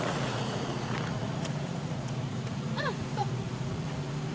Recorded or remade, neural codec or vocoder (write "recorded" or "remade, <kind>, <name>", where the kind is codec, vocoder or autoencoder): remade, vocoder, Vocos